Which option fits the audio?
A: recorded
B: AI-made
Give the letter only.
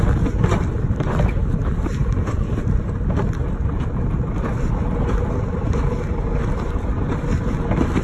A